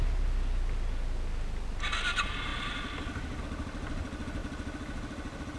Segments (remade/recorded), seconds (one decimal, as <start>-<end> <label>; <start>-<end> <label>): 0.0-5.6 recorded